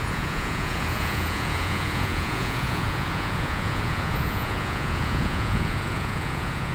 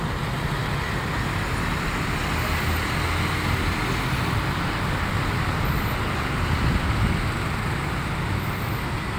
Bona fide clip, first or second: second